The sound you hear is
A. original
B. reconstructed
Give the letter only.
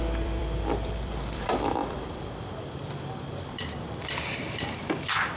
B